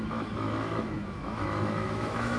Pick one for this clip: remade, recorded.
remade